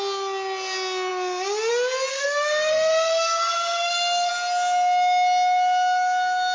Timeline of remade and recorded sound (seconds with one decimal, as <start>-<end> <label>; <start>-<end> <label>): 0.0-2.1 recorded; 2.1-4.3 remade; 4.3-6.5 recorded